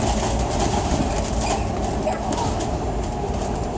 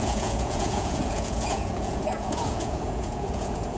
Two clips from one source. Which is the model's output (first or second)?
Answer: second